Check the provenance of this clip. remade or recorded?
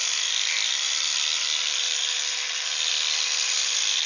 remade